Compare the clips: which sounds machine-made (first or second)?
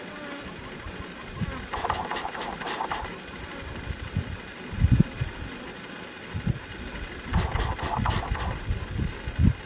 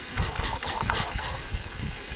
second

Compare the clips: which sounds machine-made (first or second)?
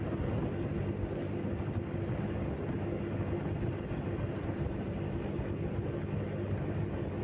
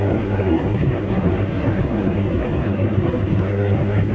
second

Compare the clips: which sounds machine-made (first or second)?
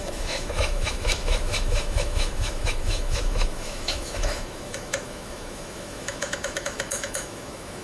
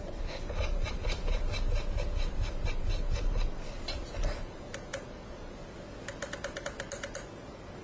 first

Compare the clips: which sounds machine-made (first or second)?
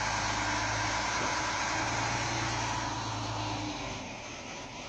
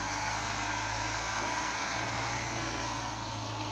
second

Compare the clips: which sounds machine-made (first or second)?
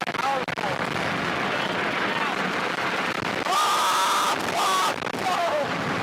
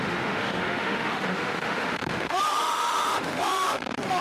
second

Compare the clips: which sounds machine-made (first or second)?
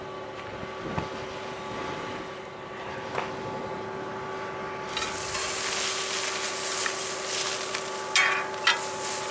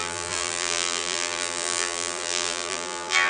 second